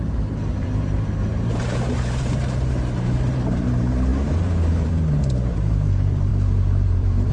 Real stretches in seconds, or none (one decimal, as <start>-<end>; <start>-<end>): none

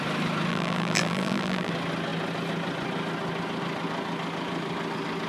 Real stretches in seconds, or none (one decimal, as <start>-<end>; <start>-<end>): 0.0-0.5; 1.7-5.3

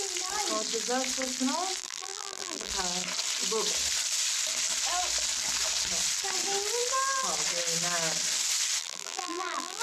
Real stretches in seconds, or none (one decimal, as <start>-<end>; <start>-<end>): 0.0-1.8; 2.7-8.8

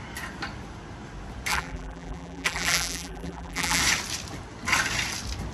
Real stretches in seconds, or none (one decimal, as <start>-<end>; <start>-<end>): 0.0-1.5; 3.8-5.5